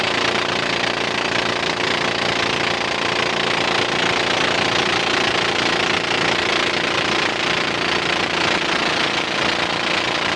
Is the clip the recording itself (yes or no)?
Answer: yes